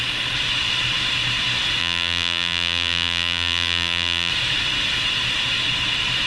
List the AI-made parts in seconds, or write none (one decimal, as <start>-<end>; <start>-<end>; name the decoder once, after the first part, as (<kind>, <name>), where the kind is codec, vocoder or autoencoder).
1.8-4.3 (vocoder, BigVGAN v2)